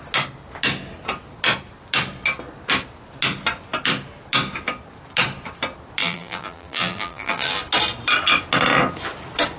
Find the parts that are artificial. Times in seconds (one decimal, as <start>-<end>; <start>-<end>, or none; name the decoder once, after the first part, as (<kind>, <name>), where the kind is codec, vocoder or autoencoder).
6.0-7.6 (vocoder, BigVGAN v2)